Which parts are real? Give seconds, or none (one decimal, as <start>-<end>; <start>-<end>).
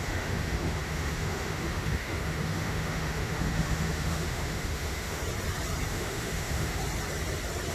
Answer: 5.2-5.9; 6.8-7.7